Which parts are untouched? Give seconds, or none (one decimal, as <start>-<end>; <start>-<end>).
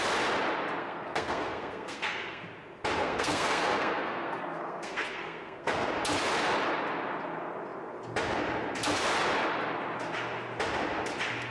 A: 0.0-0.8; 2.4-3.0; 5.9-11.5